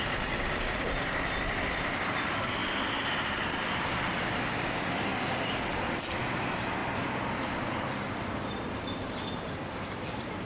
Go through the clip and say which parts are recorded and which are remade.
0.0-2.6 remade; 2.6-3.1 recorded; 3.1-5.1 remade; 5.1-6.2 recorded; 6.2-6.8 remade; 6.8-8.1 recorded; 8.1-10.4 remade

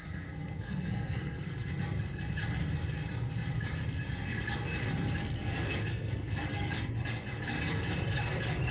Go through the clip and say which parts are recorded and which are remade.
0.0-1.7 remade; 1.7-5.2 recorded; 5.2-6.9 remade; 6.9-8.7 recorded

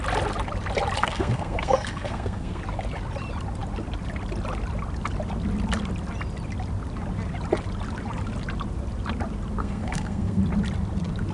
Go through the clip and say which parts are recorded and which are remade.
0.0-1.0 recorded; 1.0-2.6 remade; 2.6-9.6 recorded; 9.6-10.4 remade; 10.4-11.3 recorded

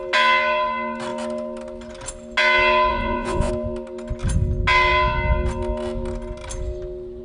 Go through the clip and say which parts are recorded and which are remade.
0.0-2.9 recorded; 2.9-3.5 remade; 3.5-7.2 recorded

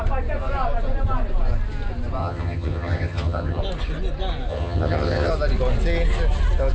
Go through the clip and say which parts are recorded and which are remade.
0.0-2.2 recorded; 2.2-3.6 remade; 3.6-4.5 recorded; 4.5-5.3 remade; 5.3-6.7 recorded